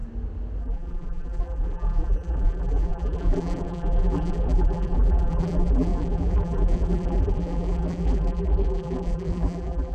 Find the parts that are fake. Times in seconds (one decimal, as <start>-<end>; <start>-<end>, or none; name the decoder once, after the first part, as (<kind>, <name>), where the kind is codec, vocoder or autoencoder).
0.6-9.9 (vocoder, BigVGAN v2)